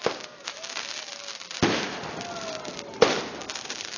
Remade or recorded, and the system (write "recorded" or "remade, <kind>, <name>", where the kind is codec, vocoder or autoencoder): recorded